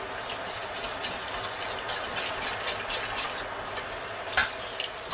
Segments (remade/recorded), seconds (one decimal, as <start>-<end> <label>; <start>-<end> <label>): 0.0-5.1 recorded